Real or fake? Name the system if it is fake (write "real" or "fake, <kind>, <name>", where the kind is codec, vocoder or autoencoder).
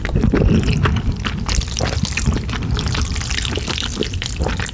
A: real